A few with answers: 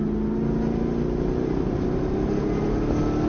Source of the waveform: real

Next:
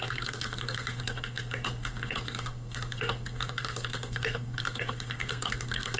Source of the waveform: fake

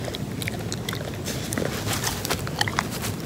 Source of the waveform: real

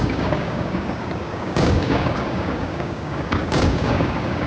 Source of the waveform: fake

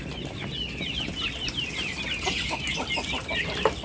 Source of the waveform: real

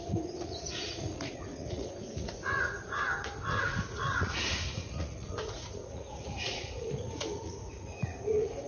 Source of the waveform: fake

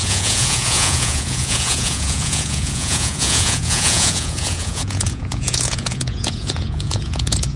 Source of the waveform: fake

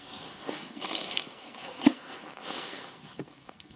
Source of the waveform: fake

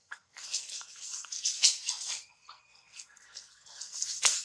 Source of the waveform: fake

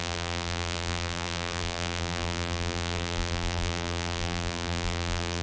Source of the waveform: fake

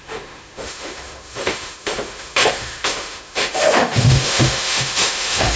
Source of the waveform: fake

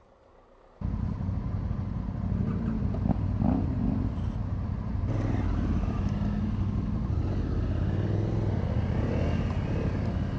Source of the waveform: real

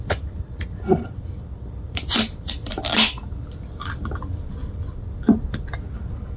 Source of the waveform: fake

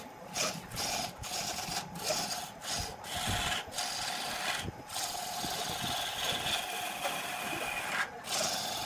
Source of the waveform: real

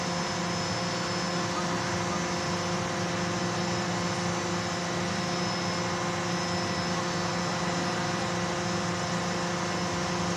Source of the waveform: real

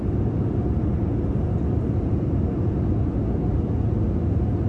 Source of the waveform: real